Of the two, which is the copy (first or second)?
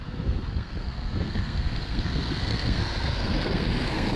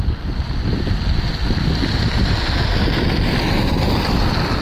first